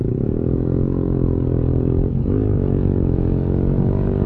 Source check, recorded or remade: remade